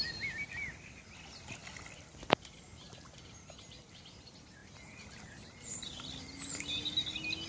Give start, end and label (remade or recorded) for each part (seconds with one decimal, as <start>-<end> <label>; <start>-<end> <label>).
0.0-7.5 recorded